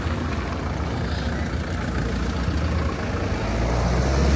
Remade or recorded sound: recorded